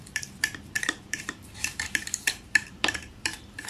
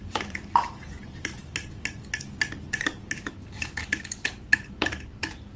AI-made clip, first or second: first